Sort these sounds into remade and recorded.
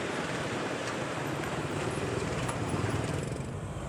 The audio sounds remade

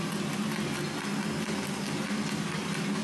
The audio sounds recorded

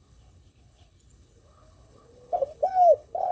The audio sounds remade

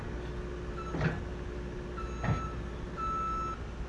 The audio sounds recorded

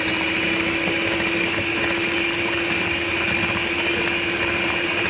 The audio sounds recorded